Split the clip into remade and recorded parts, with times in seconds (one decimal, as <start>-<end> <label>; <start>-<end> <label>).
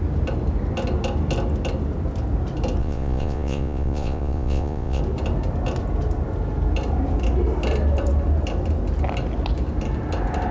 0.0-2.8 recorded; 2.8-5.0 remade; 5.0-10.5 recorded